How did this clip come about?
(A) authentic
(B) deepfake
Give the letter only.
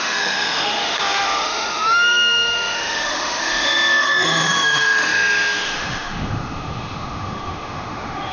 B